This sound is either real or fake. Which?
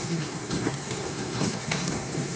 fake